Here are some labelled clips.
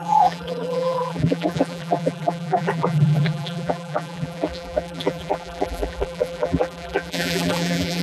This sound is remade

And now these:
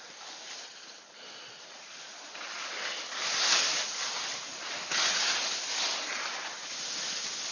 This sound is recorded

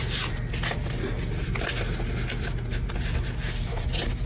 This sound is recorded